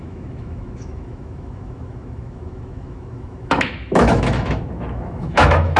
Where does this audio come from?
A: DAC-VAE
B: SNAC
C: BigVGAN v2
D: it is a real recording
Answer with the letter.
A